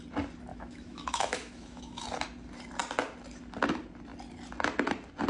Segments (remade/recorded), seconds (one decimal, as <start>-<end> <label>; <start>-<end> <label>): 0.0-0.5 recorded; 0.5-2.0 remade; 2.0-5.3 recorded